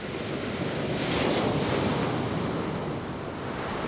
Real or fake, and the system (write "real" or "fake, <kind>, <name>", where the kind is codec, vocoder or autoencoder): real